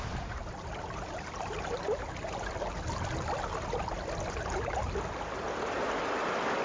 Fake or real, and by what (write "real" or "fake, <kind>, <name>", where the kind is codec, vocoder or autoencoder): real